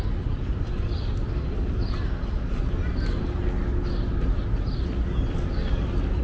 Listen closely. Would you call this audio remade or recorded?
recorded